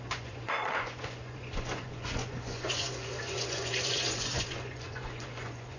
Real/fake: fake